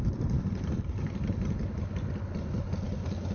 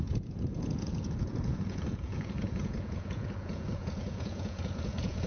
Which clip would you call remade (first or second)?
second